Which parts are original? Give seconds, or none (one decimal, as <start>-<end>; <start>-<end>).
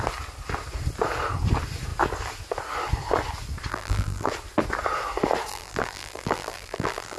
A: 0.0-3.7; 4.3-5.5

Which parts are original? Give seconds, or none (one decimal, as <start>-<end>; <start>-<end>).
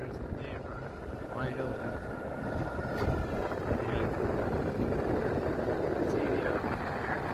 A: 0.0-7.3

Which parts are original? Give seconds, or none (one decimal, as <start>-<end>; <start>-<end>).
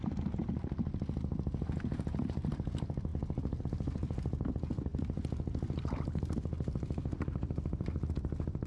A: 0.0-8.7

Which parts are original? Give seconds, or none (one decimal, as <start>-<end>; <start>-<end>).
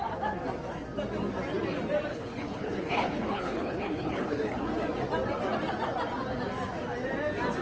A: 0.0-2.1; 4.6-7.6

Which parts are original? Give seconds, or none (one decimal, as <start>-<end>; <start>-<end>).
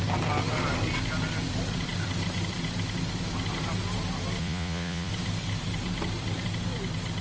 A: 0.0-4.4; 5.1-7.2